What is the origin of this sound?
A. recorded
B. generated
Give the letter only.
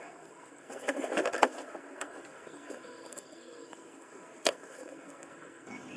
B